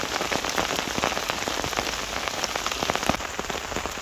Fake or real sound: real